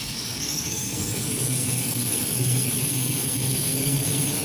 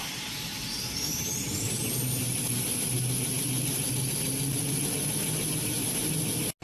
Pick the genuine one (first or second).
second